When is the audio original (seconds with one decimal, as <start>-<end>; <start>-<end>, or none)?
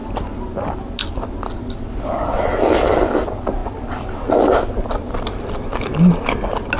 0.0-6.8